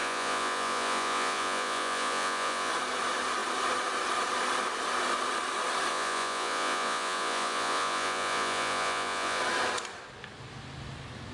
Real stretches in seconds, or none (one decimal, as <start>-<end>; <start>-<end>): 2.7-5.9; 9.4-11.3